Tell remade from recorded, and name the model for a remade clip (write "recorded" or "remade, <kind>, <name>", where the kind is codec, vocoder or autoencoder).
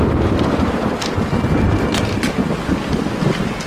recorded